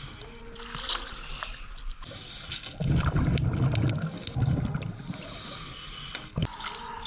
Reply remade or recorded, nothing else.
recorded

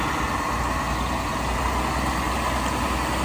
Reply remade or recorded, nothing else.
recorded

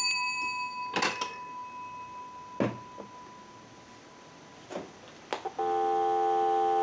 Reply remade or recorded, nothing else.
recorded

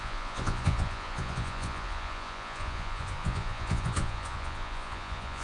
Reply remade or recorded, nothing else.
remade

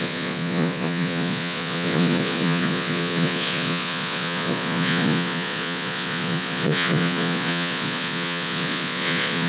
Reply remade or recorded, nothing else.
remade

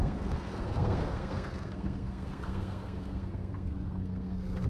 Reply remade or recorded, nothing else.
remade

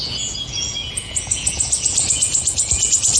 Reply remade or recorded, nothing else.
remade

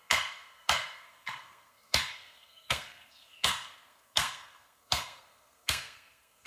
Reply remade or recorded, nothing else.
remade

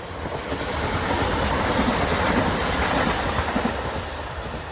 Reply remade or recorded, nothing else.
recorded